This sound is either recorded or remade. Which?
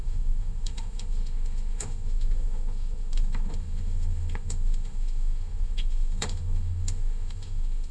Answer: remade